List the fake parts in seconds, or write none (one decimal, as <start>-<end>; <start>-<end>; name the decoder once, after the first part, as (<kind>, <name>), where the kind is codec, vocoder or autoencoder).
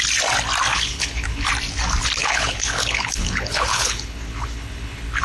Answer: 0.7-1.5 (codec, HILCodec); 2.2-5.2